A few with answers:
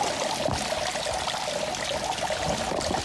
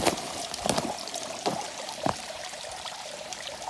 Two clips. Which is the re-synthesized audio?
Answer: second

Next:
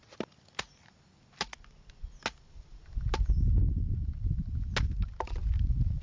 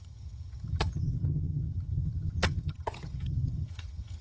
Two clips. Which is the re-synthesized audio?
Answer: second